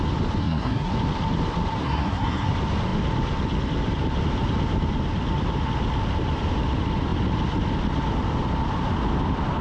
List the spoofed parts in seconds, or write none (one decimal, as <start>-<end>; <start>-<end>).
0.4-0.9; 1.8-2.5